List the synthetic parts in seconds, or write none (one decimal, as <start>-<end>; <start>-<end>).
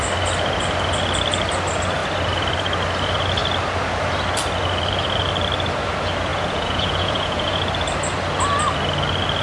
6.3-7.6